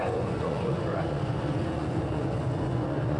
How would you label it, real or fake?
fake